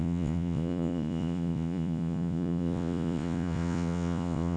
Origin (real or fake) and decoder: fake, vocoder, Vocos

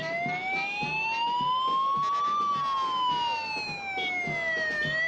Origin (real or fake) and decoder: real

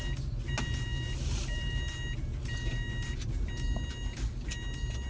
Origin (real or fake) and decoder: real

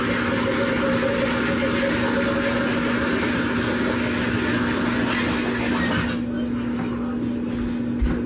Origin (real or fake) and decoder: real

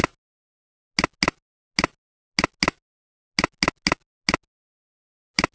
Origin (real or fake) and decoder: real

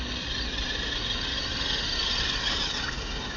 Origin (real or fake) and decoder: real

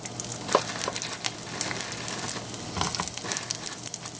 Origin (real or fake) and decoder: real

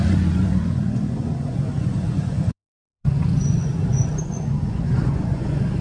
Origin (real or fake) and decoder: fake, vocoder, Vocos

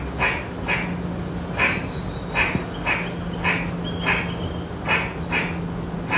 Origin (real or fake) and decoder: real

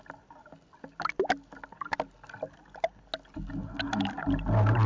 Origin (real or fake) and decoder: real